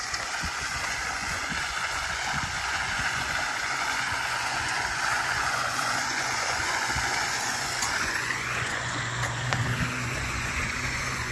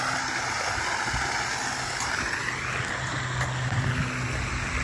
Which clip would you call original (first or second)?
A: second